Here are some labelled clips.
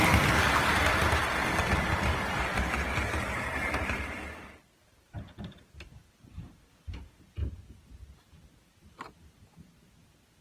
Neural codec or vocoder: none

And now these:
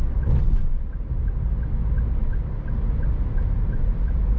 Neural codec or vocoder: none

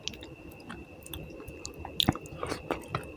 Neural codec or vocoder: none